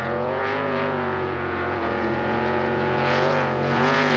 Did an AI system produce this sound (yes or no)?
yes